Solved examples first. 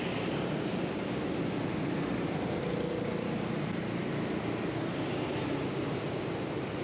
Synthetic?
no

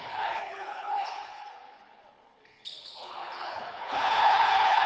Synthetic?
yes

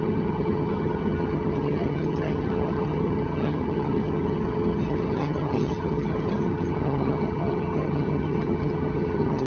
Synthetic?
yes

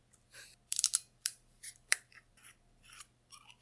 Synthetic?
yes